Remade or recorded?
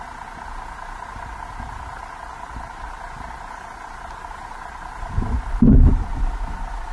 recorded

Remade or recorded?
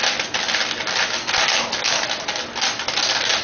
recorded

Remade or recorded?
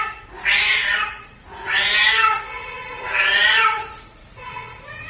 remade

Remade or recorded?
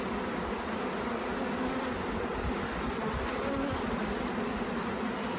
recorded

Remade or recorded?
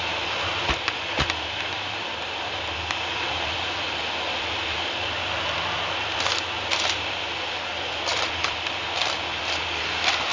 recorded